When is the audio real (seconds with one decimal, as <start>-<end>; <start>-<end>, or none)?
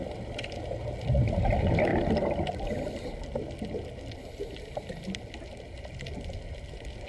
0.0-7.1